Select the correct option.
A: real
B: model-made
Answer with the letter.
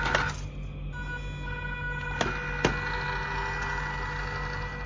A